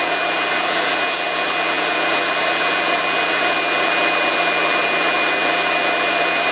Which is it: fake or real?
fake